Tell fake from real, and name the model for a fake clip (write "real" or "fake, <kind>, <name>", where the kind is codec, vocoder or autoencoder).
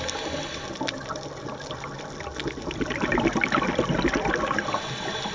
real